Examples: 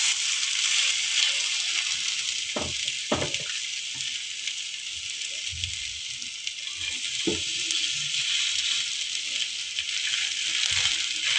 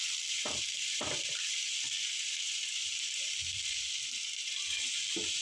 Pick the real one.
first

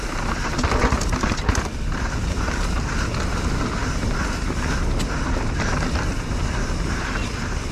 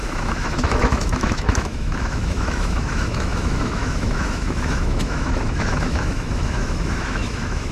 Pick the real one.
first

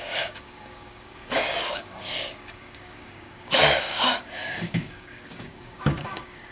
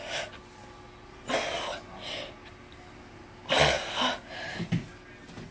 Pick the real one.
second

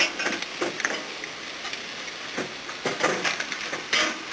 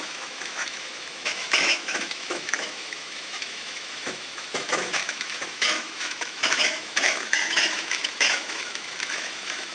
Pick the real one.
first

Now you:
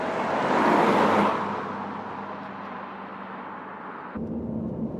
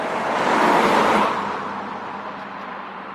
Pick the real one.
first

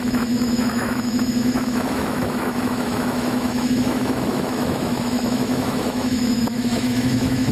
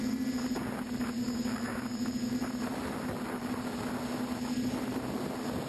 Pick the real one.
second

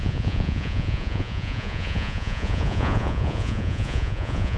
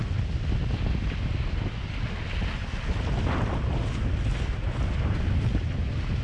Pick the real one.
second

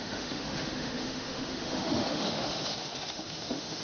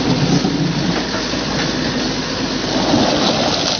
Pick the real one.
second